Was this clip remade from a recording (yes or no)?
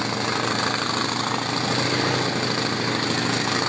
no